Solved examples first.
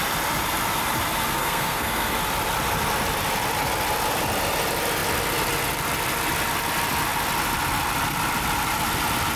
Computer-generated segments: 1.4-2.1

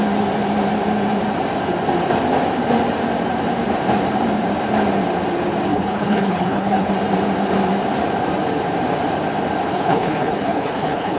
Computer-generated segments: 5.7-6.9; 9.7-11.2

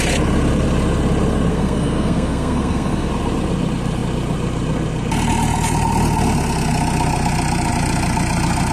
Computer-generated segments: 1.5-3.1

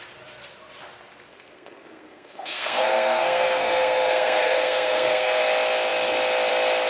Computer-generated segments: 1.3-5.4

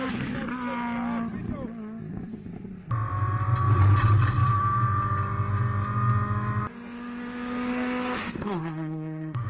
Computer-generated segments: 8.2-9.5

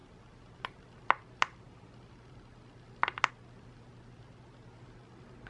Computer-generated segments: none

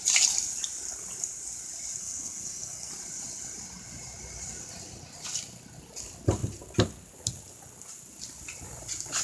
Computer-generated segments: 2.0-2.9

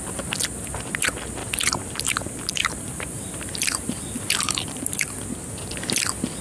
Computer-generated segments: 1.4-5.2